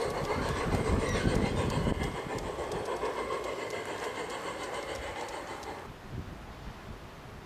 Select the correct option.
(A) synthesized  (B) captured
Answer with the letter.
B